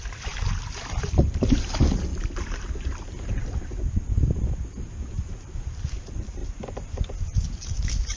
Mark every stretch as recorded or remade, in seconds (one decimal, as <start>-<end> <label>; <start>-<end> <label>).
0.0-6.4 remade; 6.4-8.2 recorded